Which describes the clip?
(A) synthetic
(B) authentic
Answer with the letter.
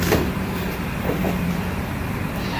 A